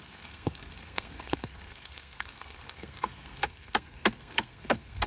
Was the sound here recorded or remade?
remade